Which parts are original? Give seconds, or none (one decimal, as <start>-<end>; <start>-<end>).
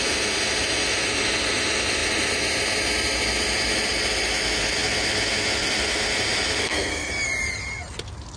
0.0-6.6; 7.1-8.4